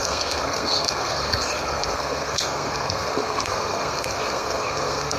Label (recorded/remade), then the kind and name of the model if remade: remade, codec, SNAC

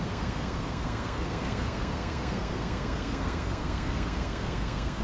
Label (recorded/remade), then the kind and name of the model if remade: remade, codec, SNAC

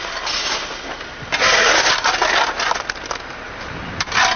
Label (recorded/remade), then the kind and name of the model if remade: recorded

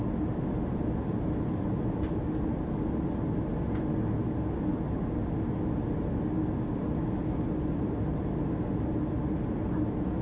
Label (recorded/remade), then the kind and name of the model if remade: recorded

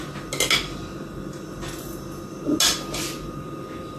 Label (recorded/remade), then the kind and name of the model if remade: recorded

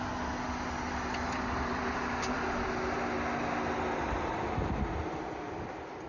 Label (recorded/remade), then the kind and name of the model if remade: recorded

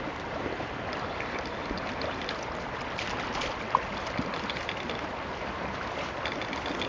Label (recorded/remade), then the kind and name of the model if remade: recorded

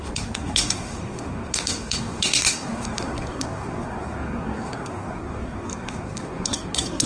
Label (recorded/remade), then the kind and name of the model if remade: remade, codec, SNAC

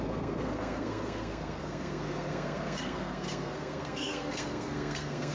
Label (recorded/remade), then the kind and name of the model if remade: remade, codec, SNAC